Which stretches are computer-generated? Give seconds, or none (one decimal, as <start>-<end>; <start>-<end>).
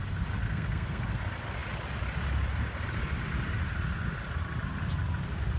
0.4-1.2